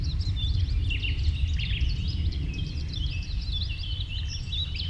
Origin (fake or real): real